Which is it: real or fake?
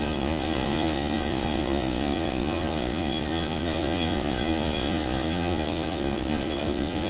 fake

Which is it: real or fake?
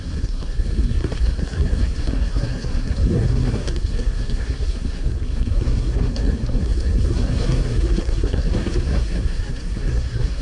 fake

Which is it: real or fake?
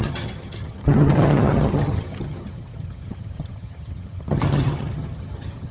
fake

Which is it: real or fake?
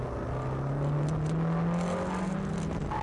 real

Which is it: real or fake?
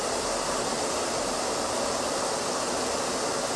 real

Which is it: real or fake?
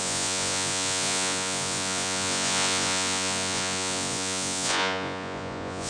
fake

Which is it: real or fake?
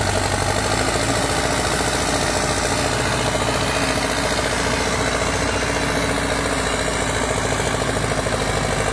real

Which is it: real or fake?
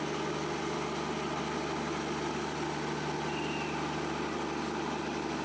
real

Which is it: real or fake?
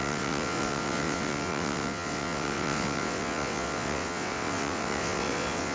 fake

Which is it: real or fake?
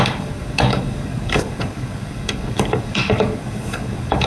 fake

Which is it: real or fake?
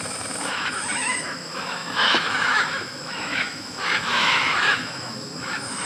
fake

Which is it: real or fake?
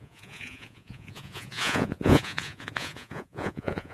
fake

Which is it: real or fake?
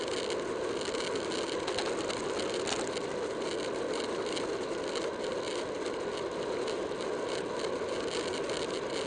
real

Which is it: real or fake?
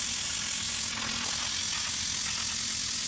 real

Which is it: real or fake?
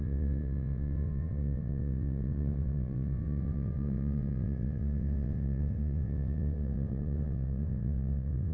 fake